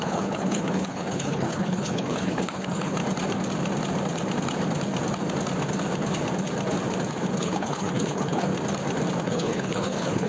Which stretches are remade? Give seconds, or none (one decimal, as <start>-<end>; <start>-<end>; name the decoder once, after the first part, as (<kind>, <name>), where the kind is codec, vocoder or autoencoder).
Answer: 0.0-3.0 (codec, HILCodec); 7.4-8.5; 9.2-10.3